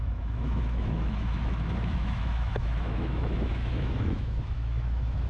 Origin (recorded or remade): remade